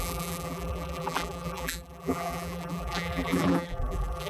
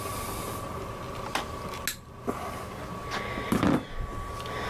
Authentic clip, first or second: second